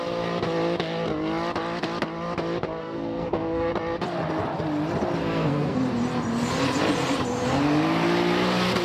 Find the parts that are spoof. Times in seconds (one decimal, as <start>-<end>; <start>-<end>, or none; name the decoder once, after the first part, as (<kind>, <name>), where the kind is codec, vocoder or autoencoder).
2.8-3.7 (codec, SNAC); 5.2-5.8

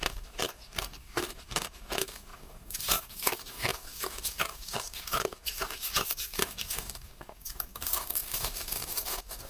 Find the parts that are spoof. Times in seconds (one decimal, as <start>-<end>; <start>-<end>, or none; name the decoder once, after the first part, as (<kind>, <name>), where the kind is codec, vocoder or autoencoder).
0.0-9.5 (codec, DAC)

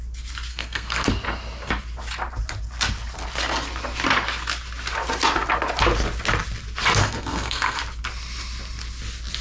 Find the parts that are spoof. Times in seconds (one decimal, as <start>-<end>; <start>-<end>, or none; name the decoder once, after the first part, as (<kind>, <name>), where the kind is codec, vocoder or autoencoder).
0.5-1.1 (codec, SNAC); 7.0-7.8

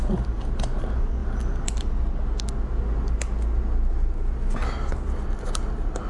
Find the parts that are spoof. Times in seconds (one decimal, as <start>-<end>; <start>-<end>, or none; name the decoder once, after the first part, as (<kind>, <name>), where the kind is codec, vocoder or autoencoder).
none